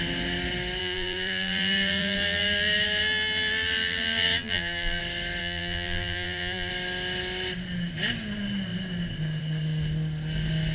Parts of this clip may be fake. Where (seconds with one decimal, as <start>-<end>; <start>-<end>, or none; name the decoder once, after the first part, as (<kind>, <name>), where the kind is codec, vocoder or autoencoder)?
0.8-5.0 (vocoder, BigVGAN v2); 5.4-6.7